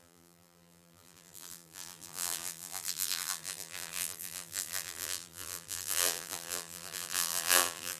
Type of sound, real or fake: fake